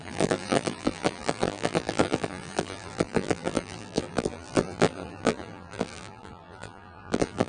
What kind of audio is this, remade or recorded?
remade